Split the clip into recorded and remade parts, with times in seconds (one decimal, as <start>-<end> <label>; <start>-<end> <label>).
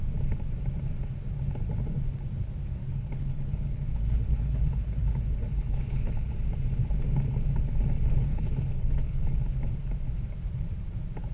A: 0.0-2.8 recorded; 2.8-6.3 remade; 6.3-8.3 recorded; 8.3-9.2 remade; 9.2-11.3 recorded